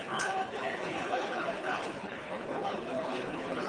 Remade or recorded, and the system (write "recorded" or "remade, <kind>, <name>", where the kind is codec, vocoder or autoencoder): remade, codec, HILCodec